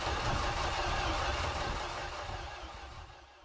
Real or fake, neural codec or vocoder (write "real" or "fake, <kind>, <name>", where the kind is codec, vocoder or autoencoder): real